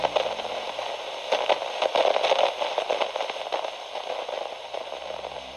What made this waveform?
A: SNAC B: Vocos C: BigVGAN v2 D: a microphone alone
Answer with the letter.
D